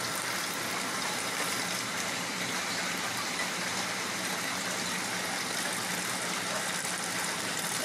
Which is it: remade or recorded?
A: remade